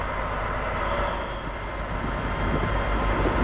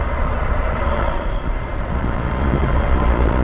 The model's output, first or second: second